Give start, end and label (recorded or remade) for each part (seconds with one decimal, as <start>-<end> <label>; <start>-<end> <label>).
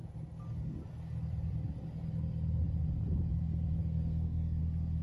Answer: 0.0-3.8 recorded; 3.8-4.6 remade; 4.6-5.0 recorded